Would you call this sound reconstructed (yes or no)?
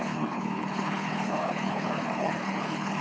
yes